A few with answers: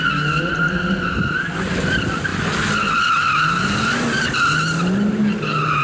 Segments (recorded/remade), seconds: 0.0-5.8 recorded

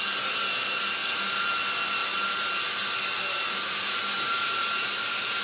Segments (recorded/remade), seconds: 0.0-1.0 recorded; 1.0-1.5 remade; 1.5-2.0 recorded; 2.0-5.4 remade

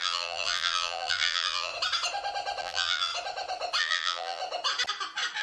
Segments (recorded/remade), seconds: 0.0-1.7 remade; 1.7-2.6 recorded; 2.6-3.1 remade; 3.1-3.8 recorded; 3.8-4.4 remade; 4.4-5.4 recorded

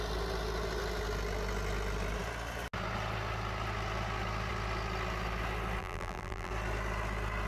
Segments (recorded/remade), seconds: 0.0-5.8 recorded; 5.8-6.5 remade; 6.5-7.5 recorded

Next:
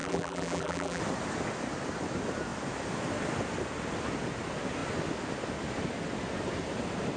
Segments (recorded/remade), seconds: 0.0-1.0 remade; 1.0-7.2 recorded

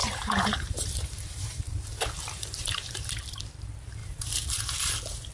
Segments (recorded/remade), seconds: 0.0-3.2 remade; 3.2-4.0 recorded; 4.0-4.8 remade; 4.8-5.3 recorded

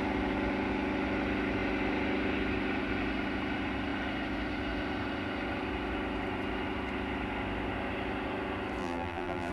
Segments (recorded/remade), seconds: 0.0-8.8 recorded; 8.8-9.5 remade